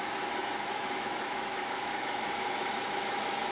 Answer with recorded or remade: remade